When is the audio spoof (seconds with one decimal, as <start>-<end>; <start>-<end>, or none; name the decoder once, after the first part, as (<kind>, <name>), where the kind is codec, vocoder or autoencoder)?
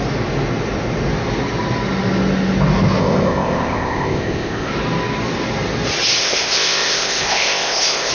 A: 3.0-4.7 (codec, ZipCodec); 6.2-8.1